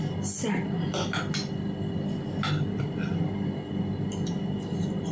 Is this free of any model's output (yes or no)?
yes